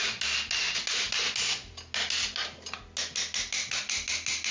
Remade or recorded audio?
recorded